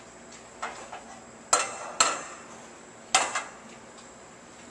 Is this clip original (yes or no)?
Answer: yes